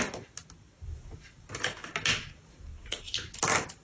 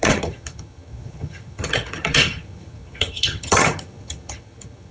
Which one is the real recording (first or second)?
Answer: first